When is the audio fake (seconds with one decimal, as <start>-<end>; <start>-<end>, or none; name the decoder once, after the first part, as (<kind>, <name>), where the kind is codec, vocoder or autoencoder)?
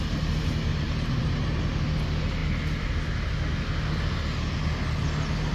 0.7-1.6 (vocoder, BigVGAN v2)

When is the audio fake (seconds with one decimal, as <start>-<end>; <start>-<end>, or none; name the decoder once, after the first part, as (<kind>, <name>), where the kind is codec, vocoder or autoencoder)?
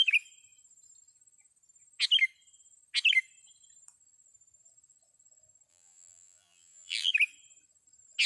5.7-7.1 (vocoder, BigVGAN v2)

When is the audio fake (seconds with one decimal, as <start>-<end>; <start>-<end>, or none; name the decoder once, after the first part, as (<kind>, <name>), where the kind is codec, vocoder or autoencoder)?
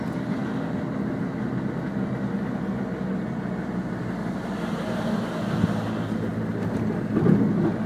0.0-0.4 (vocoder, BigVGAN v2); 4.0-6.3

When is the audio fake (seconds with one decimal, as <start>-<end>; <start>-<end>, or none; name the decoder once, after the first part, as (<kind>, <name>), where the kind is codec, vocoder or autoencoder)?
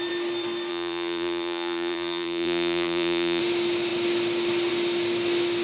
0.7-3.4 (vocoder, BigVGAN v2)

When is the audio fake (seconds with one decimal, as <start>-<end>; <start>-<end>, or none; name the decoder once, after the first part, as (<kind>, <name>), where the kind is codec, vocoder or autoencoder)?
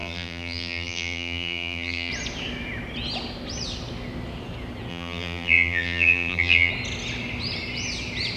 0.0-2.1 (vocoder, BigVGAN v2); 4.9-6.7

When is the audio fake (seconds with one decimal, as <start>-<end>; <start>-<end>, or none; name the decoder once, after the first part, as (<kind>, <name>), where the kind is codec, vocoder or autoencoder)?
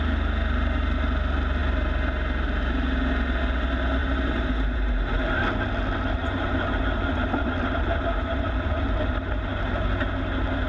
4.0-4.9 (vocoder, BigVGAN v2)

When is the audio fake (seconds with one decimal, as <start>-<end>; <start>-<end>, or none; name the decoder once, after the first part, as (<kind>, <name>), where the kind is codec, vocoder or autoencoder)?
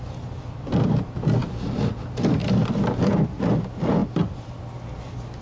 none